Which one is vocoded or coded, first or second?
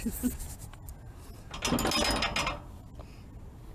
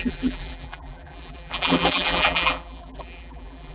second